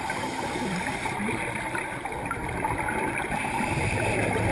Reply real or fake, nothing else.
real